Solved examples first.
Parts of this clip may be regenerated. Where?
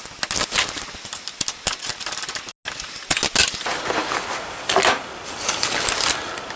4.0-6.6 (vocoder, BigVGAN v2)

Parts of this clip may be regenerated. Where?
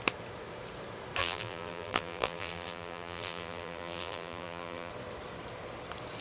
1.2-4.9 (vocoder, BigVGAN v2)